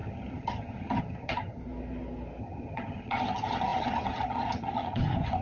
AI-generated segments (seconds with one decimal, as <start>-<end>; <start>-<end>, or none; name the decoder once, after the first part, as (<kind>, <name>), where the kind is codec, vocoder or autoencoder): 0.0-1.6 (vocoder, HiFi-GAN); 2.4-5.4

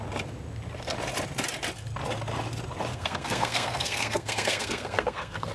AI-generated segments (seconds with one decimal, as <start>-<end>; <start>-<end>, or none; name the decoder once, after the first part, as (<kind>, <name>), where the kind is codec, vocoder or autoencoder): 2.9-5.5 (codec, SNAC)

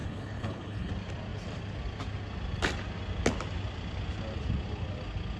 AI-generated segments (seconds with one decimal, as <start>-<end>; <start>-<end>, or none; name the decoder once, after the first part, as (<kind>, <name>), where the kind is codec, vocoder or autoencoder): 0.0-0.9 (codec, HILCodec)

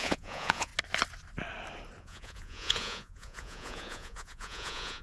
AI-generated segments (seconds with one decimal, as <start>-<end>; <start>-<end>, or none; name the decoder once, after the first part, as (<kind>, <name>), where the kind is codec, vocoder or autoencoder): 0.0-0.7 (vocoder, Vocos); 2.0-5.0

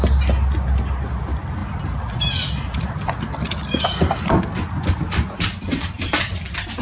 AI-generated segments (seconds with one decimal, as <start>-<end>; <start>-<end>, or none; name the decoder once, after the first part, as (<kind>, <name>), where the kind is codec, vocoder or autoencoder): none

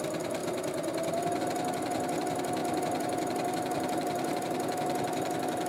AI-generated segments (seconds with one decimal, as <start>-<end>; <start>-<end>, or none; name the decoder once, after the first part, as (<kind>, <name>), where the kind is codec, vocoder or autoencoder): 2.6-5.7 (vocoder, BigVGAN v2)

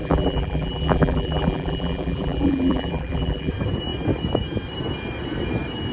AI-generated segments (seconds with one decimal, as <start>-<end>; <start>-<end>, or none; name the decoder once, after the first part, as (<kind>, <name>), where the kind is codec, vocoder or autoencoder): 0.0-3.5 (vocoder, BigVGAN v2)